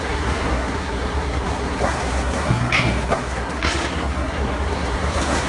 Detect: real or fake fake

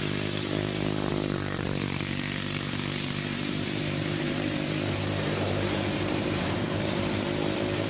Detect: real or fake fake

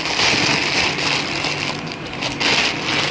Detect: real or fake real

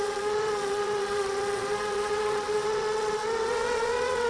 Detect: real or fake fake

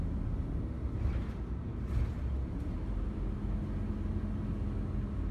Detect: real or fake real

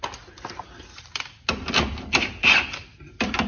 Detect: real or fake real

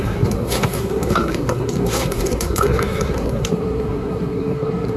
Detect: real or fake fake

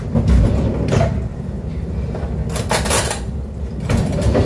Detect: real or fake real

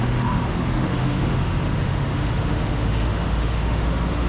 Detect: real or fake fake